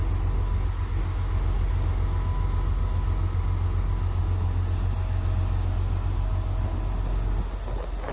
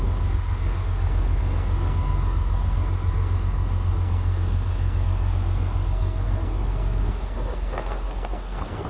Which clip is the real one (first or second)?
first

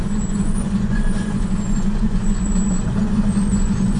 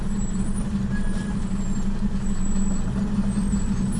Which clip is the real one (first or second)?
second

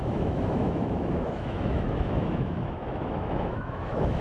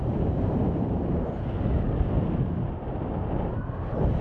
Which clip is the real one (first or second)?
second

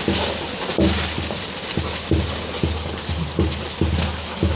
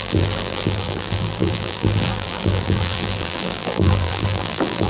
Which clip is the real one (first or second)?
first